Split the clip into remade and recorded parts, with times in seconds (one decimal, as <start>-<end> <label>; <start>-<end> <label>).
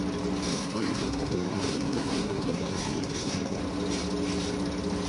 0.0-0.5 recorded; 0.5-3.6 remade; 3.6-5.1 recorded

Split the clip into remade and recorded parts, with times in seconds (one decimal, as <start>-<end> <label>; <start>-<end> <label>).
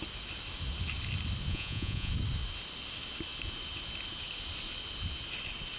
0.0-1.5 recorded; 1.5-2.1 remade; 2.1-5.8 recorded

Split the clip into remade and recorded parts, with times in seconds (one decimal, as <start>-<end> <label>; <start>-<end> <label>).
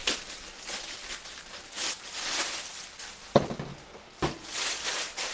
0.0-5.3 recorded